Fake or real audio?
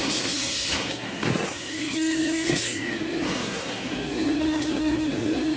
fake